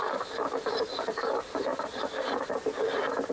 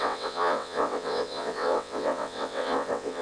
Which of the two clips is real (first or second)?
first